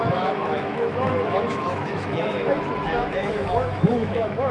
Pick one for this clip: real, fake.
fake